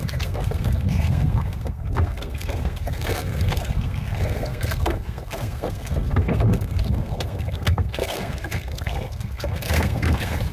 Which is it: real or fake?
fake